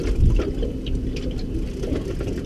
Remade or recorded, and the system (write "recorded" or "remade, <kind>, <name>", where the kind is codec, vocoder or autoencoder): recorded